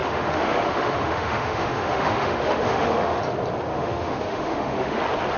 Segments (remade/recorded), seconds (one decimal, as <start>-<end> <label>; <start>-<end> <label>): 0.0-3.2 remade; 3.2-3.7 recorded; 3.7-5.0 remade; 5.0-5.4 recorded